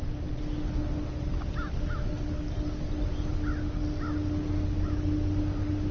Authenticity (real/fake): real